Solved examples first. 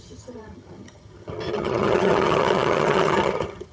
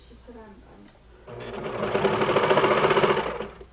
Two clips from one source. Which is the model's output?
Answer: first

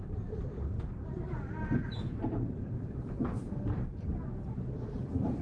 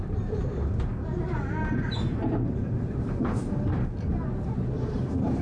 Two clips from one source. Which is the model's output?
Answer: first